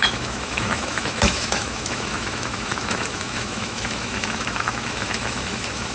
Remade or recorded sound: remade